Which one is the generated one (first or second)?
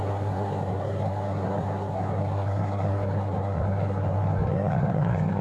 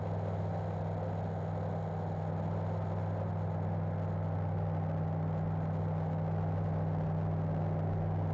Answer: first